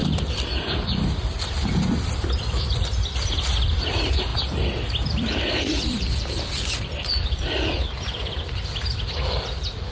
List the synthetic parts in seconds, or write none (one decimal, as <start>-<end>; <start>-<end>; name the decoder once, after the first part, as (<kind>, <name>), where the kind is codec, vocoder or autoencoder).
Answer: 0.0-4.3 (vocoder, BigVGAN v2); 4.9-9.9